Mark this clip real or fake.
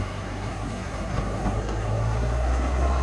fake